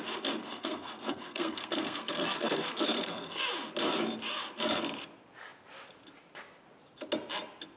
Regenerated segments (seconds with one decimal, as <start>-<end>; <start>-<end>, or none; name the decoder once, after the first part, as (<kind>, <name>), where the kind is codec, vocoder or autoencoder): 0.4-3.4 (codec, SNAC)